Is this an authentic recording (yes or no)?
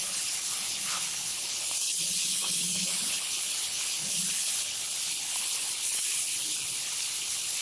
no